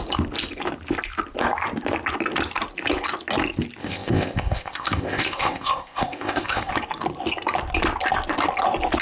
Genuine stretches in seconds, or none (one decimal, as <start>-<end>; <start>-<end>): 0.0-3.8; 6.7-9.0